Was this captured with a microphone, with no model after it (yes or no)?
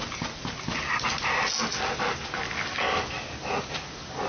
yes